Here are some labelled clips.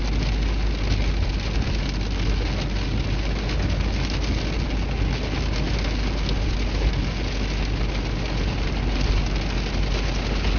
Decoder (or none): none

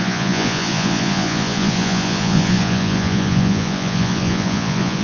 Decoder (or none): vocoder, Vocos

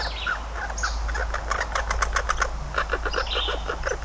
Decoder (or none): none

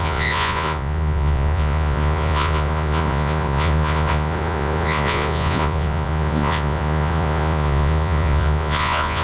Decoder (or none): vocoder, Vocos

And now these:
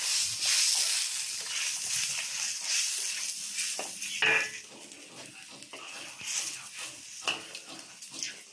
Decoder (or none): none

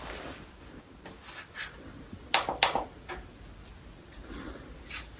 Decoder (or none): none